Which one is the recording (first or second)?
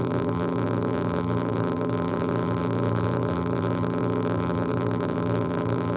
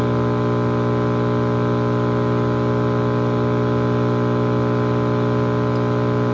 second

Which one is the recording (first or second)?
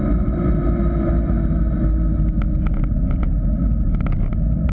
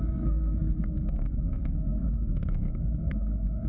first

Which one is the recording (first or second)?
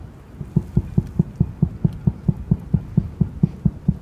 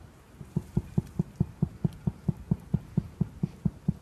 first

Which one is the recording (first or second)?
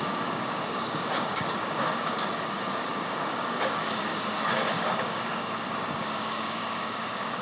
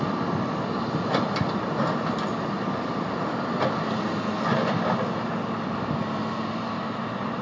second